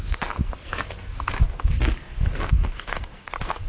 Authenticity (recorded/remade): remade